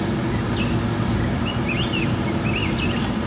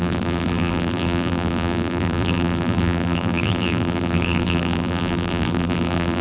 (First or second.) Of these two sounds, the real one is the first